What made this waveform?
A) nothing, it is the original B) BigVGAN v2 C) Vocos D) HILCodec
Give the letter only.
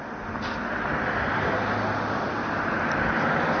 A